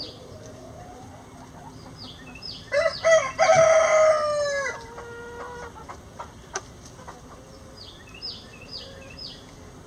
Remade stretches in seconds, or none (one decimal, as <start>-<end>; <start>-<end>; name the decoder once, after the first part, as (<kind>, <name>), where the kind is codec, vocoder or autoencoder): none